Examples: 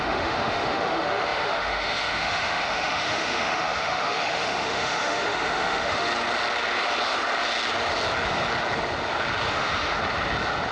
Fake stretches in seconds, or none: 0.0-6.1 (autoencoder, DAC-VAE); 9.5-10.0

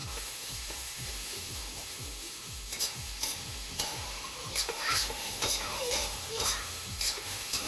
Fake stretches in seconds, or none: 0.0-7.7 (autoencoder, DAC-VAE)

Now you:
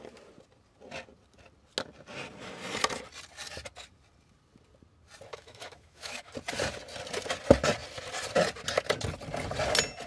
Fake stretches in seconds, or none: 5.3-6.3 (autoencoder, DAC-VAE)

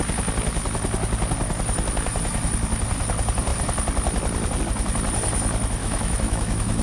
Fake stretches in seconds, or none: 5.8-6.8 (autoencoder, DAC-VAE)

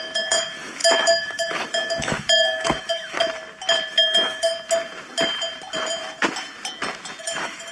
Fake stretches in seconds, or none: 0.0-3.3 (autoencoder, DAC-VAE); 3.9-4.5; 7.2-7.7

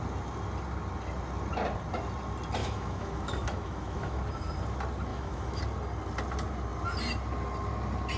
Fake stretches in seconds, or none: 2.6-4.2 (autoencoder, DAC-VAE); 5.1-5.6

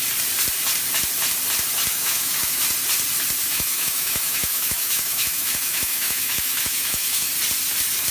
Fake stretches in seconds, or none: 1.9-2.6 (autoencoder, DAC-VAE); 3.5-7.3